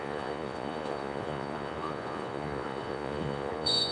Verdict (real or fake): fake